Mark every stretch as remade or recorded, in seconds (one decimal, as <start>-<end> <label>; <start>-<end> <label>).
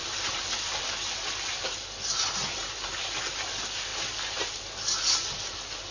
0.0-5.9 recorded